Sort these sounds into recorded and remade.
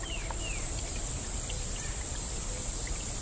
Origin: recorded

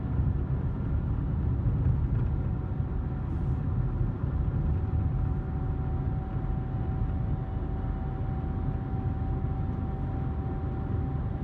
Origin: recorded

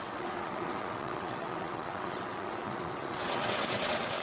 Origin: remade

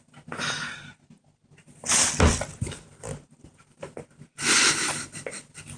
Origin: recorded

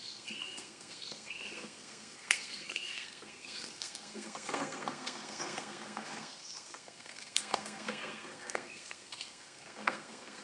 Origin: remade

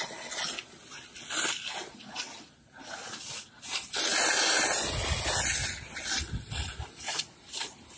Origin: recorded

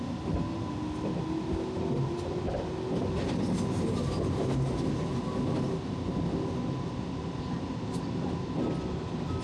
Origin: recorded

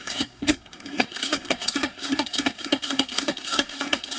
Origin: remade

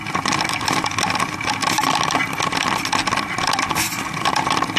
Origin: recorded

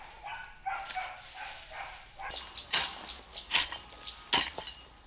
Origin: recorded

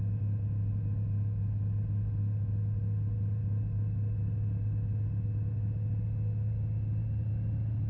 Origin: recorded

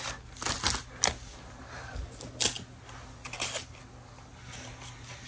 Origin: recorded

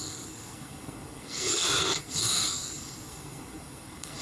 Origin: remade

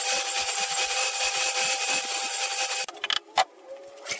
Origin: recorded